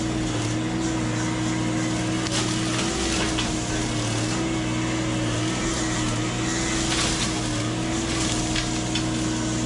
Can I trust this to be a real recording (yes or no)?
yes